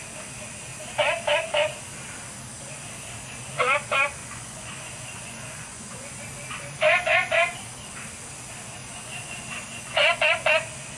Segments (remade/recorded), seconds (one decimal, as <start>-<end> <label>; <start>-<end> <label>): 0.0-4.2 recorded; 4.2-6.2 remade; 6.2-8.8 recorded; 8.8-10.2 remade; 10.2-11.0 recorded